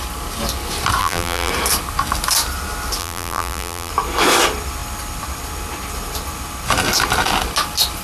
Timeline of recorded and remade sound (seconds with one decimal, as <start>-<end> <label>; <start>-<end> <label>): 0.0-1.0 recorded; 1.0-1.5 remade; 1.5-3.0 recorded; 3.0-3.9 remade; 3.9-8.0 recorded